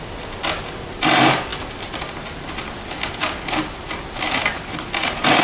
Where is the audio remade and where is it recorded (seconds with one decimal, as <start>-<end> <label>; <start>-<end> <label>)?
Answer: 0.0-1.5 recorded; 1.5-2.0 remade; 2.0-5.4 recorded